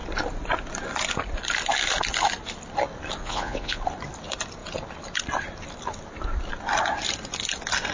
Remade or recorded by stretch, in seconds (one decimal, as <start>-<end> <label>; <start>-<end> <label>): 0.0-3.2 recorded; 3.2-3.8 remade; 3.8-7.9 recorded